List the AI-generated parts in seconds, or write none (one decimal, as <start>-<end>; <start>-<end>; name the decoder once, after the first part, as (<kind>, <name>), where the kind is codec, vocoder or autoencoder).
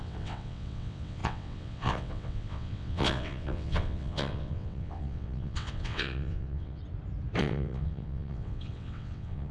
0.0-6.8 (vocoder, WaveNeXt); 7.4-9.5